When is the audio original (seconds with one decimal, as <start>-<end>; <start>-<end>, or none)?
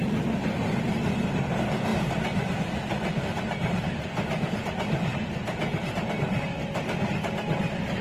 0.0-5.1; 6.1-8.0